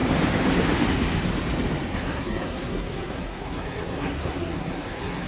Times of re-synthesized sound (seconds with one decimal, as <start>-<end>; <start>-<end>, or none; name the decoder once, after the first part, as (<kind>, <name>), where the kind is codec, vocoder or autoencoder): 1.9-5.3 (codec, SNAC)